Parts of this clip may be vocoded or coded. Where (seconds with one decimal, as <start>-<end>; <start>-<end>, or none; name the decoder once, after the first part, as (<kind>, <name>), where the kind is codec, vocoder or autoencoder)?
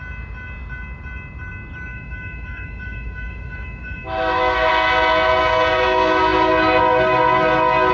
1.9-4.7 (autoencoder, DAC-VAE)